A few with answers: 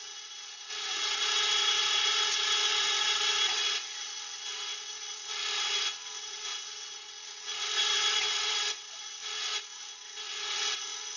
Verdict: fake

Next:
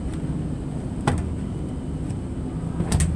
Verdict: real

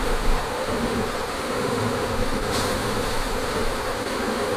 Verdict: fake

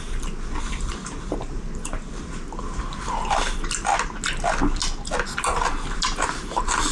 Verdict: real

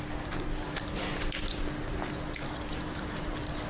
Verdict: real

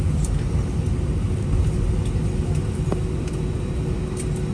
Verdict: real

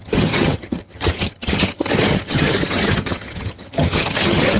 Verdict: fake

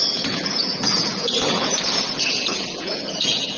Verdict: fake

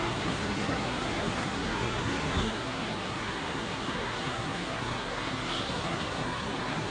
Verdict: fake